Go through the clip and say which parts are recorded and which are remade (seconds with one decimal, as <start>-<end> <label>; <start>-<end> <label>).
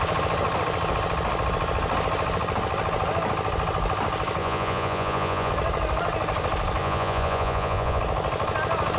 0.0-4.4 recorded; 4.4-5.5 remade; 5.5-6.8 recorded; 6.8-8.0 remade; 8.0-9.0 recorded